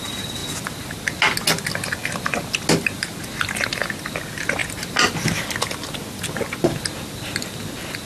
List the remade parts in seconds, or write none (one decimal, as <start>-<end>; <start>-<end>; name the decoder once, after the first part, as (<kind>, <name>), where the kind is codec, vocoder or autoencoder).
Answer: none